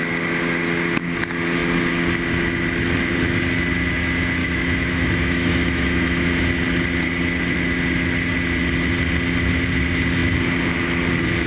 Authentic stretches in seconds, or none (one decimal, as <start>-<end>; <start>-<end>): 0.0-4.4; 6.3-11.5